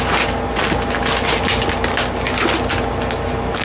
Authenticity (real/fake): real